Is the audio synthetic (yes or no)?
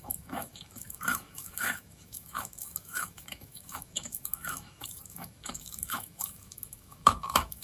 yes